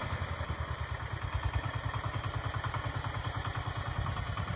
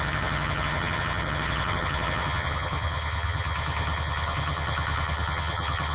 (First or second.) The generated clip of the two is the second